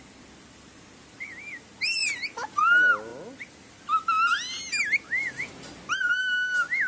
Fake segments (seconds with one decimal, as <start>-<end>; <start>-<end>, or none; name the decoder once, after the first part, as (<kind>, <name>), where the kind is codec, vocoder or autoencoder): none